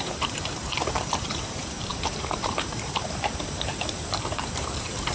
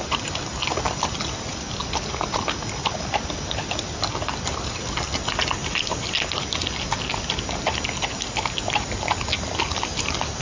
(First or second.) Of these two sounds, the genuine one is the second